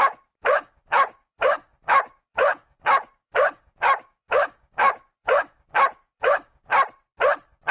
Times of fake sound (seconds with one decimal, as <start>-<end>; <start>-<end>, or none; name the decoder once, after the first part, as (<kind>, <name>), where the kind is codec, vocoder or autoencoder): 0.0-6.7 (codec, DAC)